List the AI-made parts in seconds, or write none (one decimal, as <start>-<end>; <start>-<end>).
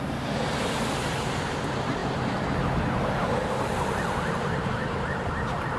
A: 0.0-2.0; 4.3-5.8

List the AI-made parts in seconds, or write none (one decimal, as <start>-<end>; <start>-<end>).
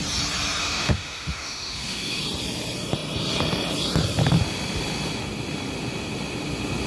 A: 0.6-2.2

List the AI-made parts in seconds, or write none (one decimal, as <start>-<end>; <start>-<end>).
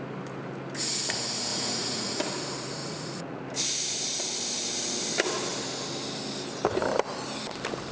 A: 1.5-2.2; 2.8-3.4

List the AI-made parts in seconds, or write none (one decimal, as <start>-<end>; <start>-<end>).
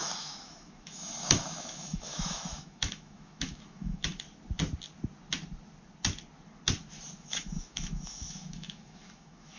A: 0.0-4.1; 7.2-9.6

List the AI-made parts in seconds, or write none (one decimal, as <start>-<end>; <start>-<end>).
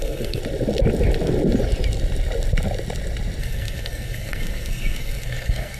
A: 0.0-0.4; 3.4-5.8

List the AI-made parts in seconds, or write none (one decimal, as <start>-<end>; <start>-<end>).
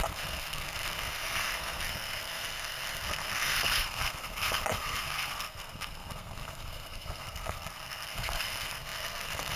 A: 0.0-9.6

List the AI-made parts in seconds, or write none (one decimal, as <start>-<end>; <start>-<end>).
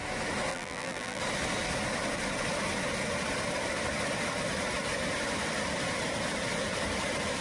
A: 0.5-1.2